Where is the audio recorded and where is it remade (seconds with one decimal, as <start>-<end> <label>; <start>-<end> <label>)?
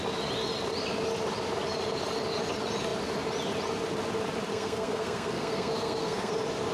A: 0.0-4.5 recorded; 4.5-6.3 remade; 6.3-6.7 recorded